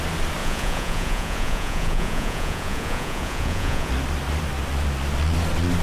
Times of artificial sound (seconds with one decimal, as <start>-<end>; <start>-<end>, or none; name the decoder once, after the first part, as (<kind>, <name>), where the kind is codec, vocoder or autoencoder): 0.4-3.9 (vocoder, Vocos)